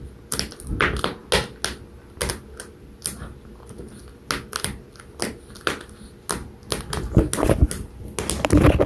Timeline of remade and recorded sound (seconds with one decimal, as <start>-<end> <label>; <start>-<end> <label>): 0.0-8.9 recorded